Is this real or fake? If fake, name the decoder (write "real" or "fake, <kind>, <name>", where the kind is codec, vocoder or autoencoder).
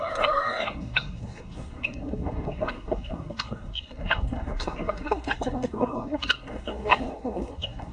fake, codec, SNAC